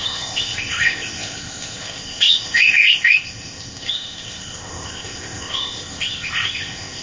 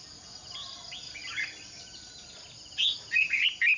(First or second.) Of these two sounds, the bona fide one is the second